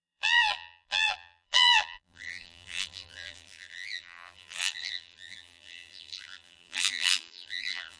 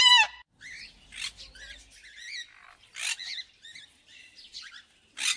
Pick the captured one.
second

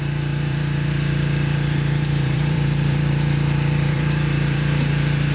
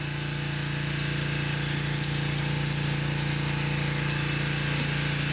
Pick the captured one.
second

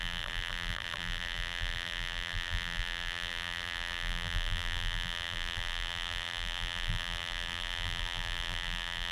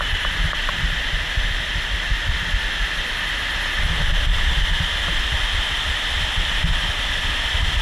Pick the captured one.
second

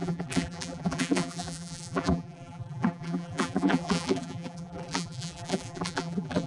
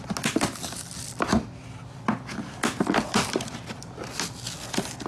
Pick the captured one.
second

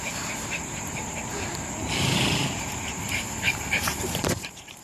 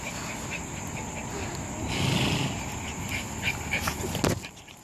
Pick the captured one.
second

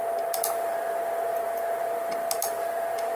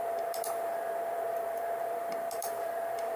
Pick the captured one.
first